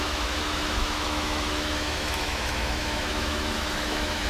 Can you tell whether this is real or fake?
fake